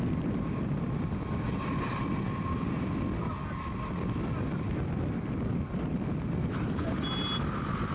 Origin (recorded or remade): recorded